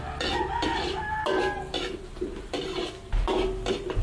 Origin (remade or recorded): recorded